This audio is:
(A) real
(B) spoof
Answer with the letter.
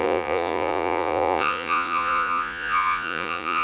B